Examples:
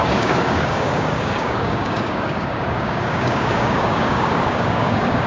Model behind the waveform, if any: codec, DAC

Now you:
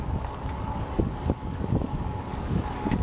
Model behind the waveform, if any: codec, DAC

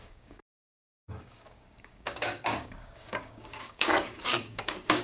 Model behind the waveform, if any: codec, DAC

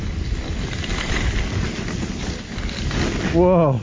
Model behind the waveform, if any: none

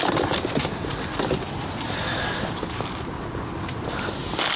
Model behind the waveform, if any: none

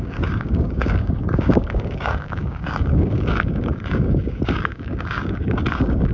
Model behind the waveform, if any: codec, DAC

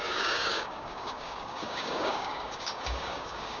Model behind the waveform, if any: codec, DAC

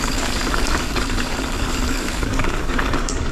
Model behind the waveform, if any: codec, DAC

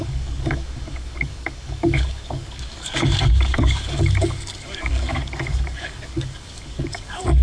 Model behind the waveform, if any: codec, DAC